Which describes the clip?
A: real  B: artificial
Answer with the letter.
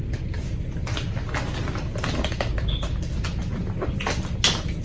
A